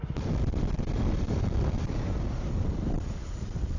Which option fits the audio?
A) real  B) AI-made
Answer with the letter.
A